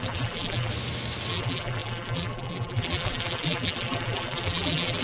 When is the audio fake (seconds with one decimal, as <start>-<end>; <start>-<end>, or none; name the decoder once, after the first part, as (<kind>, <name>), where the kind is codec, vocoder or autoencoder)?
0.0-0.7 (vocoder, BigVGAN v2); 1.3-5.0